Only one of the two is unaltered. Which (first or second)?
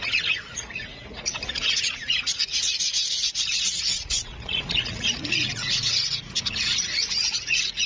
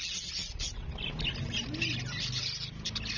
second